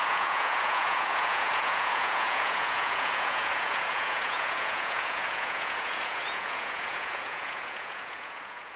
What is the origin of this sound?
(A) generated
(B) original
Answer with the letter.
A